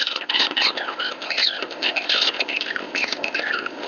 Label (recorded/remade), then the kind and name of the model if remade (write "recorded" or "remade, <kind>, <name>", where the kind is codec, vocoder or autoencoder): remade, codec, ZipCodec